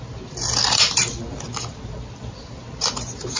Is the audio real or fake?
real